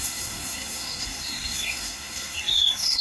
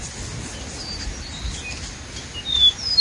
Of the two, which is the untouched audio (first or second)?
second